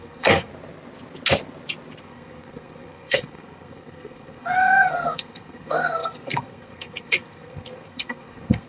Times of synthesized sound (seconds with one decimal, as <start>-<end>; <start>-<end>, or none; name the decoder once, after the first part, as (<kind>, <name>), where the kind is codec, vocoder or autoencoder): 0.0-0.5 (codec, SNAC); 2.0-8.7